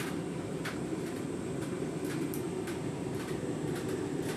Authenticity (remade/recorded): remade